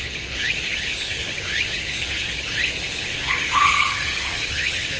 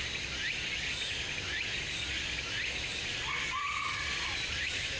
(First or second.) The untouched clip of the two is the second